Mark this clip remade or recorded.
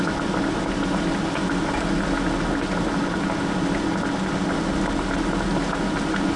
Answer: recorded